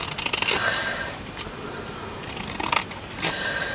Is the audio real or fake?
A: real